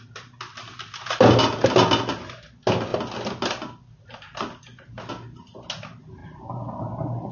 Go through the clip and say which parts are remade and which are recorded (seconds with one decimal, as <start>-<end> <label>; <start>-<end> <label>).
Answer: 0.0-7.3 recorded